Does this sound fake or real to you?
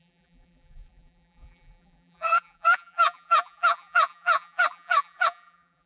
fake